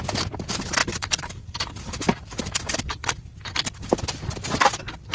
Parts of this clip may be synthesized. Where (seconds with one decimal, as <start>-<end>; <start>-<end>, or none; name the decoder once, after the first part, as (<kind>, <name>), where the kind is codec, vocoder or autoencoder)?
0.8-3.9 (vocoder, BigVGAN v2)